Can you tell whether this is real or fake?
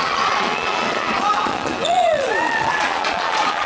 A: fake